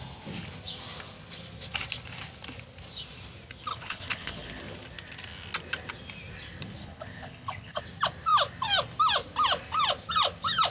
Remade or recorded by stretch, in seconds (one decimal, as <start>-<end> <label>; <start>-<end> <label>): 0.0-3.7 recorded; 3.7-4.6 remade; 4.6-6.8 recorded; 6.8-7.8 remade; 7.8-10.7 recorded